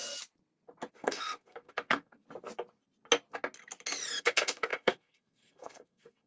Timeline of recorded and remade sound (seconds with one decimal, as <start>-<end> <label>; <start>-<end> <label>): 0.0-0.9 recorded; 0.9-2.2 remade; 2.2-4.2 recorded; 4.2-6.3 remade